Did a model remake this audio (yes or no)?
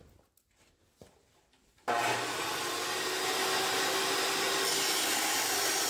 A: no